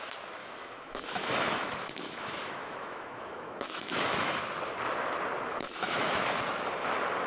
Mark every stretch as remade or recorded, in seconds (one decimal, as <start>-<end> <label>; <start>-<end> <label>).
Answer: 0.0-0.4 recorded; 0.4-4.4 remade; 4.4-5.5 recorded; 5.5-6.1 remade; 6.1-7.3 recorded